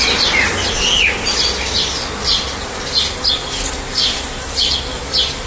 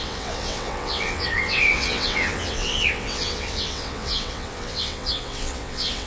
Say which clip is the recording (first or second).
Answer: first